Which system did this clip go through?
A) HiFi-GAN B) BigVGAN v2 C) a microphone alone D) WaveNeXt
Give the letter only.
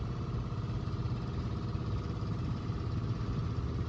C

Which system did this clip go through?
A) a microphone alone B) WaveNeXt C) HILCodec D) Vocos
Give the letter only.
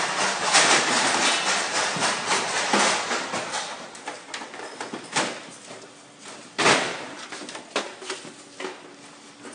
A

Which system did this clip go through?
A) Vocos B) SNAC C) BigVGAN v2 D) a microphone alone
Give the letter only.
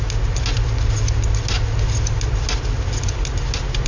D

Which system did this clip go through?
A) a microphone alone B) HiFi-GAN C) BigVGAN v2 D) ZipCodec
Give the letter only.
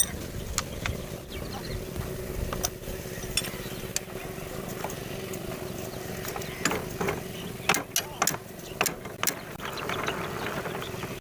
A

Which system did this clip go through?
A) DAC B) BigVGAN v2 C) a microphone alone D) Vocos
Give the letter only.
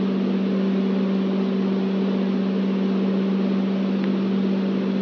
C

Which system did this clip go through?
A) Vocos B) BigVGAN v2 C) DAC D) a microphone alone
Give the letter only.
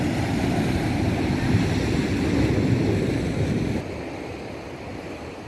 D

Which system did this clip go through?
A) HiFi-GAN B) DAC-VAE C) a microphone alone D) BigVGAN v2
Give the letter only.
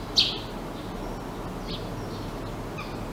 C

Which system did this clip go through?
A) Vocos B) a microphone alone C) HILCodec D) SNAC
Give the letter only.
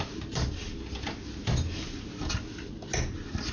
B